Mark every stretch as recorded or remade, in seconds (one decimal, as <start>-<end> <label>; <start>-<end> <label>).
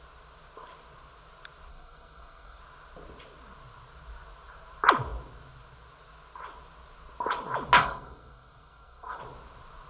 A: 0.0-1.7 recorded; 1.7-2.6 remade; 2.6-7.8 recorded; 7.8-9.2 remade; 9.2-9.9 recorded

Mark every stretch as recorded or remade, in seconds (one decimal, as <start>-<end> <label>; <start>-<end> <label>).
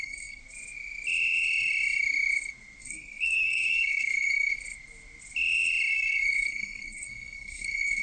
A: 0.0-0.4 remade; 0.4-2.8 recorded; 2.8-4.5 remade; 4.5-5.9 recorded; 5.9-8.0 remade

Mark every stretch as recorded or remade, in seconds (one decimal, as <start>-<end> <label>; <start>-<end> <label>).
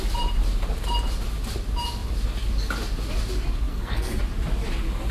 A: 0.0-3.7 recorded; 3.7-4.2 remade; 4.2-5.1 recorded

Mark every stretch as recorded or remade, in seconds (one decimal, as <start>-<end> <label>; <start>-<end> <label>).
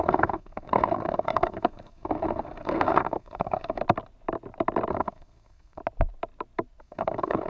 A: 0.0-3.8 remade; 3.8-4.9 recorded; 4.9-5.8 remade; 5.8-6.8 recorded; 6.8-7.5 remade